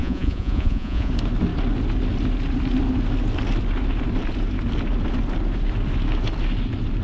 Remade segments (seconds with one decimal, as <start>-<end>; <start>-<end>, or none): 0.0-1.1